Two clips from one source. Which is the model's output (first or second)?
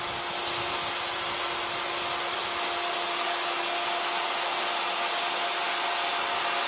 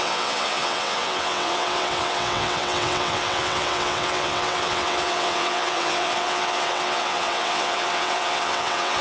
second